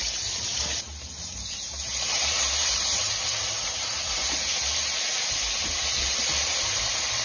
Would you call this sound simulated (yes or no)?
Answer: yes